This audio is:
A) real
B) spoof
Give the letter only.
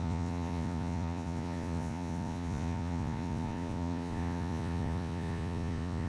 B